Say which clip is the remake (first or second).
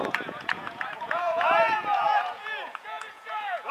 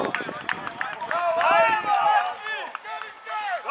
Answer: first